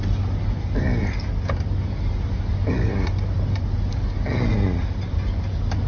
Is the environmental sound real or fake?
real